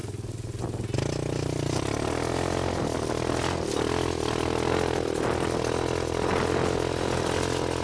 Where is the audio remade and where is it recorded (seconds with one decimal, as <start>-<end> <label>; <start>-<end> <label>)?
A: 0.0-7.8 recorded